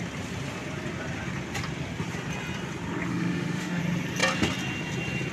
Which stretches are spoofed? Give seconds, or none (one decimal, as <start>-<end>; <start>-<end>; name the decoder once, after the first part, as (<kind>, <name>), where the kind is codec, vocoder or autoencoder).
3.1-3.8 (autoencoder, DAC-VAE)